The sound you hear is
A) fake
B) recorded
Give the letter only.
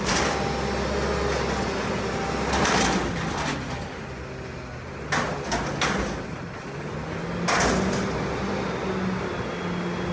B